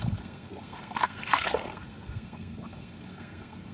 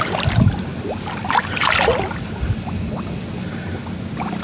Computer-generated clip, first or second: first